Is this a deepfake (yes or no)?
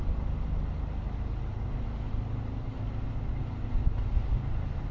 no